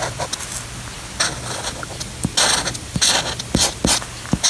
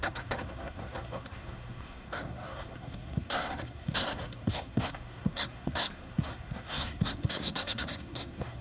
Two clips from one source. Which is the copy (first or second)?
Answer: second